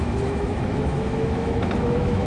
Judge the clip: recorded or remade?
remade